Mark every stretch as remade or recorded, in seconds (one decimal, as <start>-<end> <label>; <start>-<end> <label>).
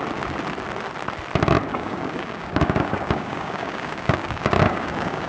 0.0-1.7 recorded; 1.7-5.3 remade